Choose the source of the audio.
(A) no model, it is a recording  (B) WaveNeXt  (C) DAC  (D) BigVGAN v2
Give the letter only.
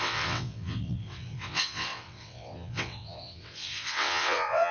B